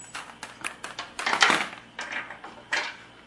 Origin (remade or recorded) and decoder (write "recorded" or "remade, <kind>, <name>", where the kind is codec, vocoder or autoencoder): recorded